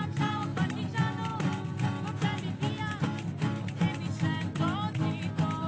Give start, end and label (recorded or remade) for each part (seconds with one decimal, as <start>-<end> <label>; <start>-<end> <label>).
0.0-5.7 recorded